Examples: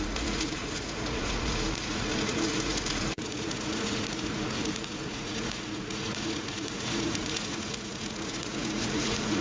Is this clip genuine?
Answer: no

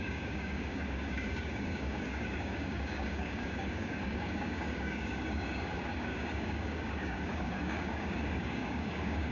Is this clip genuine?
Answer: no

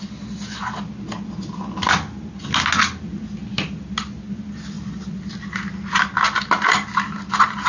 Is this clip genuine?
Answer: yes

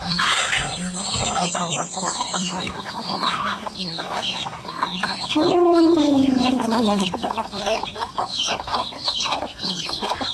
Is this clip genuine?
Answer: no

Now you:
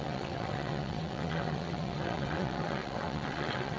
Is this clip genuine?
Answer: no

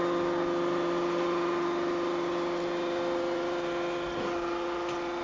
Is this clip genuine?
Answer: yes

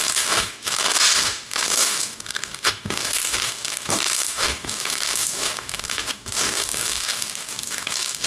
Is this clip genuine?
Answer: no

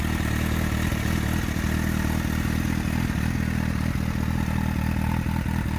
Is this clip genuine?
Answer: yes